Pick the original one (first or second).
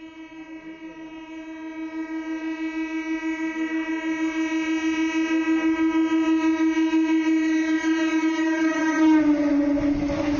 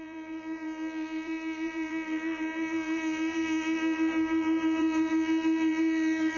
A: first